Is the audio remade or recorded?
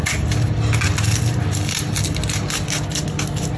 recorded